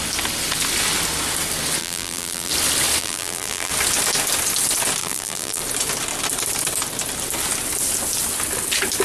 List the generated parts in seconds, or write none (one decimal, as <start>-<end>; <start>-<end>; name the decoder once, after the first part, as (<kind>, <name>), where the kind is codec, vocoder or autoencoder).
1.8-2.5 (vocoder, BigVGAN v2); 3.0-3.7; 5.0-5.6